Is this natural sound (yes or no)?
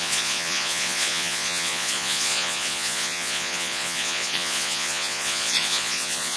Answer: no